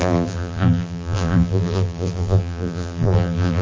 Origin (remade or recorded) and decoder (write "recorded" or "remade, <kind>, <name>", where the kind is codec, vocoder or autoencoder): remade, vocoder, BigVGAN v2